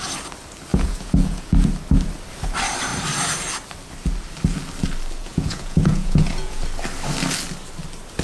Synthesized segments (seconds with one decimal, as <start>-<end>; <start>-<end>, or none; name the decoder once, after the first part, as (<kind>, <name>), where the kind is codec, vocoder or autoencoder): 0.7-1.7 (vocoder, Vocos); 5.2-6.6